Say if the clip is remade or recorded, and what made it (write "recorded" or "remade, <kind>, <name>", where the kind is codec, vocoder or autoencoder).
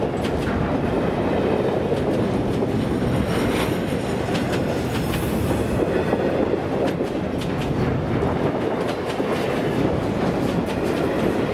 recorded